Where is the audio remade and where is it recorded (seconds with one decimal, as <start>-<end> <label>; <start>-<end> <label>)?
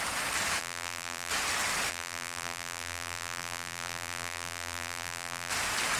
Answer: 0.0-0.6 recorded; 0.6-1.3 remade; 1.3-1.9 recorded; 1.9-5.5 remade; 5.5-6.0 recorded